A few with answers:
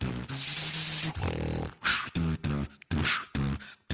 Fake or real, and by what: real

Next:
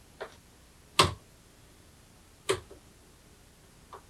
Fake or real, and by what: real